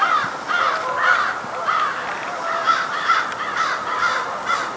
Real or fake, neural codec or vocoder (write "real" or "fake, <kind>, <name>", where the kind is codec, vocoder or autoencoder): real